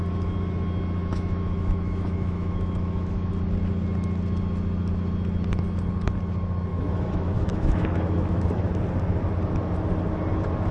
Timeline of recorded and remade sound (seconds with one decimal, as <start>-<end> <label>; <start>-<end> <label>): 0.0-1.0 recorded; 1.0-3.3 remade; 3.3-6.7 recorded; 6.7-8.7 remade; 8.7-10.7 recorded

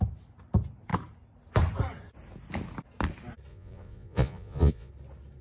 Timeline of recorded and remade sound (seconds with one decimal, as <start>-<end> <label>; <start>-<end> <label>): 0.0-3.5 recorded; 3.5-4.9 remade; 4.9-5.4 recorded

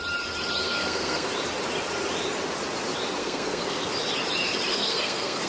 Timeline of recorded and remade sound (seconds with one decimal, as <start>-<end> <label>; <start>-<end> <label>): 0.0-0.6 recorded; 0.6-1.3 remade; 1.3-3.2 recorded; 3.2-3.9 remade; 3.9-4.7 recorded; 4.7-5.5 remade

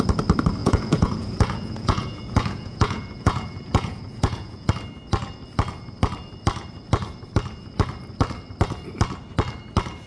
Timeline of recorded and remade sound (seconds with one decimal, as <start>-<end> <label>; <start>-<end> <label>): 0.0-0.6 recorded; 0.6-4.7 remade; 4.7-10.1 recorded

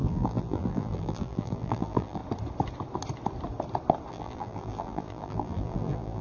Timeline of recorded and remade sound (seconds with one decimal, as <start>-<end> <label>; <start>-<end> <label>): 0.0-2.2 remade; 2.2-4.1 recorded; 4.1-6.2 remade